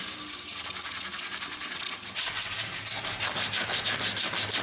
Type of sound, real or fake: real